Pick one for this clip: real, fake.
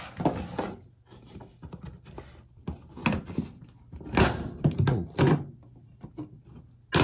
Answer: real